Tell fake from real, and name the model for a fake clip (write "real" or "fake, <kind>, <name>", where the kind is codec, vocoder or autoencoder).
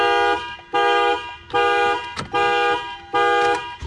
real